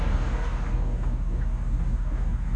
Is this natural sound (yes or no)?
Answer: no